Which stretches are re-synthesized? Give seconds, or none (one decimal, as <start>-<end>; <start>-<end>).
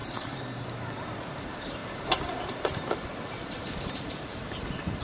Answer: 0.0-5.0